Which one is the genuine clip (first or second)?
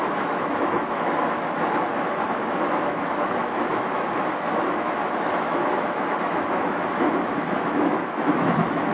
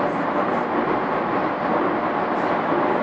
second